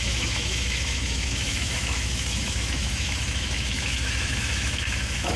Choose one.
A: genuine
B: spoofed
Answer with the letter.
B